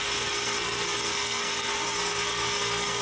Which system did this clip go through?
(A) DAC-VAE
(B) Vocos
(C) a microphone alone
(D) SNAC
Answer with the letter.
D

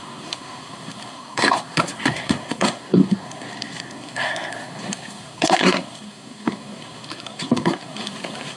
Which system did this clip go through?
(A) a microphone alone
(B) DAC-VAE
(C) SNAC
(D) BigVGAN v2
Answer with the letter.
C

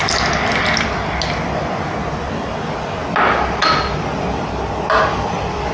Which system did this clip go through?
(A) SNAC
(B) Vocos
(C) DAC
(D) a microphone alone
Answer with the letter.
D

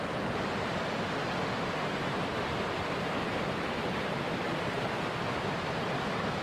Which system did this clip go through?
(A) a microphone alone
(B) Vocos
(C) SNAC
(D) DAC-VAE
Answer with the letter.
A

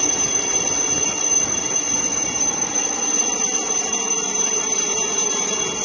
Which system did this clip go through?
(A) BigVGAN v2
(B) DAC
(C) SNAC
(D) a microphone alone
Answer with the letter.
D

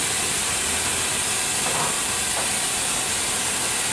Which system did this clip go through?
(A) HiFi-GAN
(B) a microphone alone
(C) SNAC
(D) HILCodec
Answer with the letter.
B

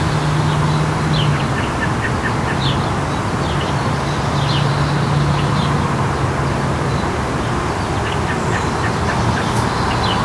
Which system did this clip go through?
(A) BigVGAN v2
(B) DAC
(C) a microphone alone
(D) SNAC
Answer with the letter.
C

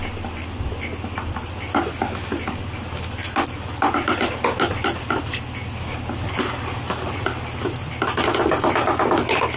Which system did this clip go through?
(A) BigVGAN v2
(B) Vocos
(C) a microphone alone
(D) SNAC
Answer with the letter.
C